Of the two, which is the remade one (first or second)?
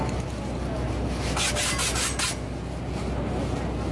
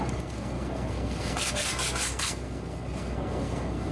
second